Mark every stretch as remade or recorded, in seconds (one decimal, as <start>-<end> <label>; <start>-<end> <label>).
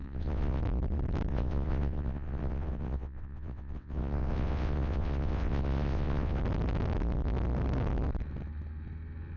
0.0-0.6 remade; 0.6-1.3 recorded; 1.3-6.4 remade; 6.4-9.4 recorded